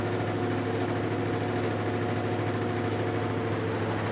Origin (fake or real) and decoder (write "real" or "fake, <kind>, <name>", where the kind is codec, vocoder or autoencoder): real